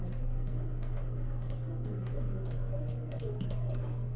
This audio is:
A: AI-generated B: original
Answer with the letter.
A